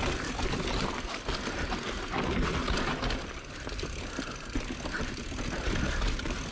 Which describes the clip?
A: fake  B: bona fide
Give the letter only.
B